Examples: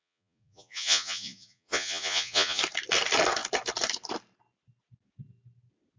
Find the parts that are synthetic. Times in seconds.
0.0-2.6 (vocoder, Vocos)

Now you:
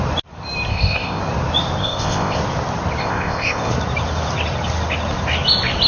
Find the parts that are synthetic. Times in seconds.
0.7-1.2 (codec, ZipCodec); 1.8-2.4; 3.0-3.7

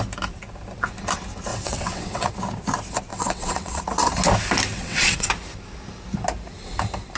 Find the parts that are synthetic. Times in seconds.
1.5-2.3 (vocoder, WaveNeXt); 3.1-3.8; 4.7-5.3

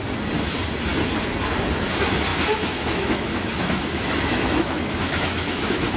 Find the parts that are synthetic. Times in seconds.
2.3-6.0 (autoencoder, DAC-VAE)